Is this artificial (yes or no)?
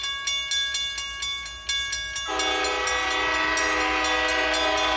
no